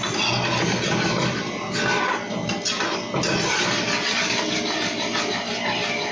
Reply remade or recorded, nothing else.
recorded